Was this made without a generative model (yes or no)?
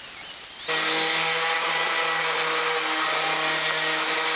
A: yes